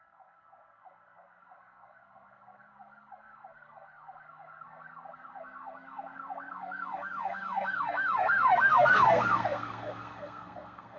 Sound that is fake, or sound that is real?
fake